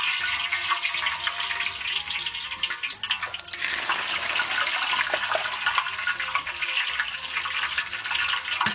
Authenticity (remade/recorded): recorded